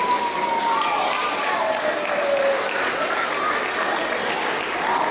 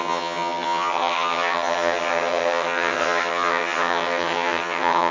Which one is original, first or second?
first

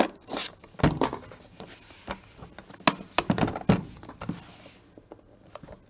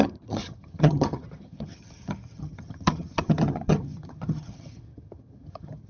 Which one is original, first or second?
first